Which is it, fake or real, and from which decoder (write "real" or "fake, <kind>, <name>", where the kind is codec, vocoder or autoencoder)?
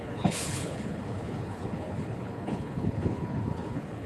fake, codec, HILCodec